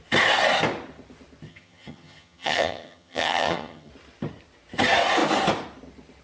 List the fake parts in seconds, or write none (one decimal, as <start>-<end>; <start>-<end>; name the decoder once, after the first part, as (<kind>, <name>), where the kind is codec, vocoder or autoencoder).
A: 1.5-3.9 (vocoder, HiFi-GAN)